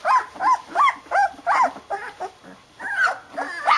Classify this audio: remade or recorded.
recorded